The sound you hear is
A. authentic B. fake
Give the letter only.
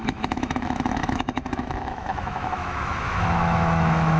B